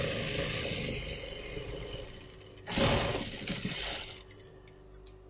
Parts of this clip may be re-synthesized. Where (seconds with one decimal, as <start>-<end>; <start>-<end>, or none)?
none